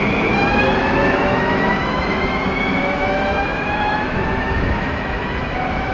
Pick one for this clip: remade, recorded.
remade